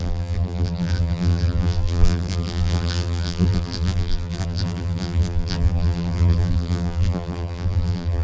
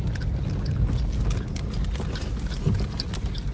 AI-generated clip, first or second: first